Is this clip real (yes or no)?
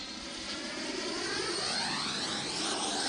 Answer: yes